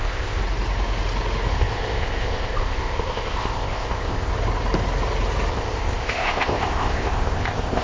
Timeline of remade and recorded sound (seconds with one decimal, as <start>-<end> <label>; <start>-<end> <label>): 0.0-0.4 remade; 0.4-1.5 recorded; 1.5-4.3 remade; 4.3-5.5 recorded; 5.5-7.8 remade

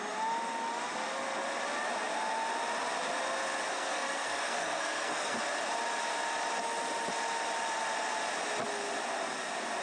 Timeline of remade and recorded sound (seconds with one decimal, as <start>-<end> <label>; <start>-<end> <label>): 0.0-3.7 recorded; 3.7-5.4 remade; 5.4-9.8 recorded